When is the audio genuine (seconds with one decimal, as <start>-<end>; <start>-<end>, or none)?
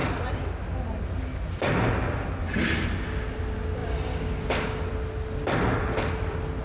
0.0-6.6